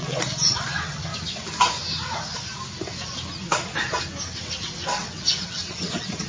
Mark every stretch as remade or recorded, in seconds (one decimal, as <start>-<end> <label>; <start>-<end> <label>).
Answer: 0.0-1.1 remade; 1.1-4.2 recorded; 4.2-6.3 remade